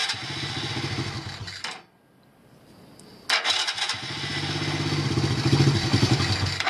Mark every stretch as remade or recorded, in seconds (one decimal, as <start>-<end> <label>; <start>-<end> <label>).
0.0-0.7 remade; 0.7-6.7 recorded